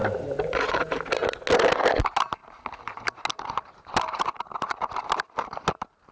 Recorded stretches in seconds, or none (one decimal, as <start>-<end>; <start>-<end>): 0.0-6.1